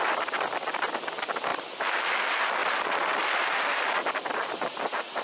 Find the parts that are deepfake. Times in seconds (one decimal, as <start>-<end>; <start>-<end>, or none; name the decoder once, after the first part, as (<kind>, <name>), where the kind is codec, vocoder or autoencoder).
none